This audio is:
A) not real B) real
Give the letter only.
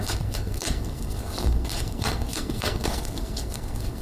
A